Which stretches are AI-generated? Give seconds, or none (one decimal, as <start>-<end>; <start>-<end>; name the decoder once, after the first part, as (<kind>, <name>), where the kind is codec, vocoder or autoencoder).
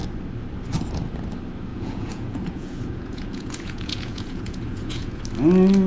1.7-5.2 (vocoder, Vocos)